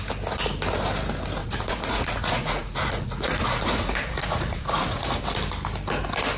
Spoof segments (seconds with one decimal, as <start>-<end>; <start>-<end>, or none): 1.4-5.2